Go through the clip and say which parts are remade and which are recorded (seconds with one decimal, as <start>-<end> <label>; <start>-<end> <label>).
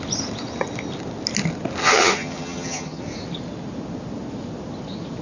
0.0-1.8 recorded; 1.8-3.0 remade; 3.0-5.2 recorded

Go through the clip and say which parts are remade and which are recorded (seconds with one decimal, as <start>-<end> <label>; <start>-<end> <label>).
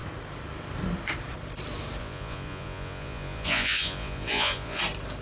0.0-2.0 recorded; 2.0-4.8 remade; 4.8-5.2 recorded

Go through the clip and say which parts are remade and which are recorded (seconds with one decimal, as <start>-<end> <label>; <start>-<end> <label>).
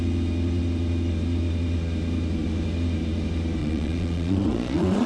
0.0-3.6 recorded; 3.6-5.1 remade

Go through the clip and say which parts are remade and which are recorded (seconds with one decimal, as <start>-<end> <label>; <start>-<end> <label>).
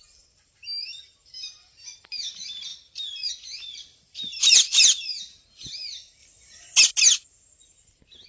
0.0-2.7 recorded; 2.7-3.3 remade; 3.3-3.9 recorded; 3.9-5.2 remade; 5.2-6.2 recorded; 6.2-6.8 remade; 6.8-8.3 recorded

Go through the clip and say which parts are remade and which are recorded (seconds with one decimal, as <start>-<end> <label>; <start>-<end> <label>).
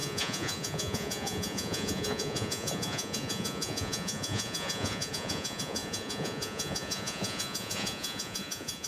0.0-8.9 remade